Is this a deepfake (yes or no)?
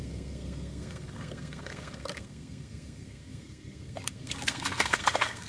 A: yes